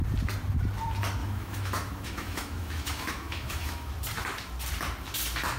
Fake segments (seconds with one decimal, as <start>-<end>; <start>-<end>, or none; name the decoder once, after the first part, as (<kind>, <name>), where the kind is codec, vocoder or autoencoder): 1.2-3.9 (autoencoder, DAC-VAE)